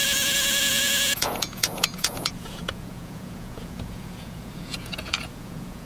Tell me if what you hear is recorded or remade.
remade